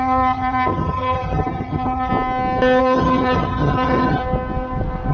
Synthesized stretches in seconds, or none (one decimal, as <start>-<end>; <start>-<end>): 0.0-2.1; 2.8-4.2